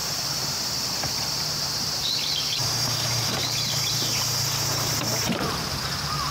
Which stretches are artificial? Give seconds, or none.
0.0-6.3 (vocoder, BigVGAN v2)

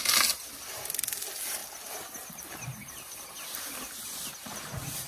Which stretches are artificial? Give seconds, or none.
1.6-5.1 (vocoder, BigVGAN v2)

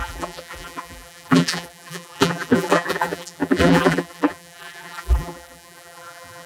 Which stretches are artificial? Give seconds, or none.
0.0-6.5 (vocoder, BigVGAN v2)

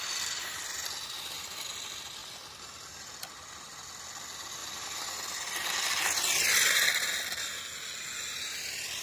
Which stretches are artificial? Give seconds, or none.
4.6-7.5 (vocoder, BigVGAN v2)